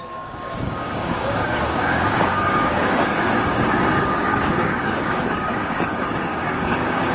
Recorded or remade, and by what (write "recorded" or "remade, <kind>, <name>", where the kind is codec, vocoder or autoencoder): remade, codec, DAC